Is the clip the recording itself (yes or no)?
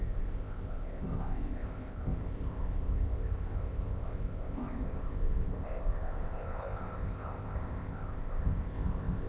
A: no